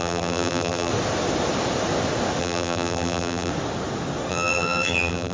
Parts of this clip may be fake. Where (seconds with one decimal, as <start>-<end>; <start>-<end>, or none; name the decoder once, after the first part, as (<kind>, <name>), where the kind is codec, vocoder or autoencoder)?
0.0-0.9 (vocoder, BigVGAN v2); 2.4-3.5; 4.3-5.3